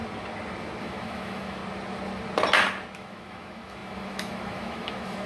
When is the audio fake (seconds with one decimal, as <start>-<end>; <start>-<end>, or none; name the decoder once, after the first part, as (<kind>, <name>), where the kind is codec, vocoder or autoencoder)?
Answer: 0.8-1.6 (autoencoder, DAC-VAE); 2.9-5.3